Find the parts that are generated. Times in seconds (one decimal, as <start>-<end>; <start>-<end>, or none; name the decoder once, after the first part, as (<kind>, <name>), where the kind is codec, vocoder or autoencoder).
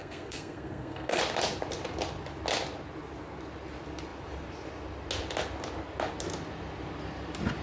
0.0-1.2 (codec, SNAC)